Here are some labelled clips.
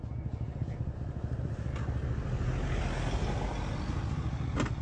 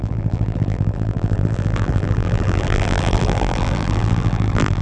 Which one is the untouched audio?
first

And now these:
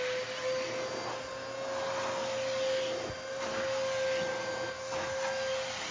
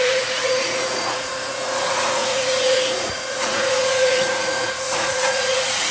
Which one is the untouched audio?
first